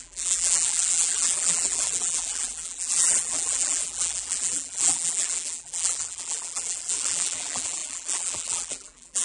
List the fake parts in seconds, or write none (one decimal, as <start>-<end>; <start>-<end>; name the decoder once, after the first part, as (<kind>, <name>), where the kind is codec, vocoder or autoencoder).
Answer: 0.0-9.2 (vocoder, BigVGAN v2)